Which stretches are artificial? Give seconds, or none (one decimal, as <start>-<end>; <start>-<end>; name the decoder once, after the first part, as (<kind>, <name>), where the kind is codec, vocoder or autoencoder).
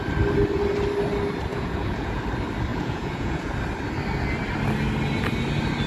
1.5-2.2 (vocoder, Vocos); 2.7-3.5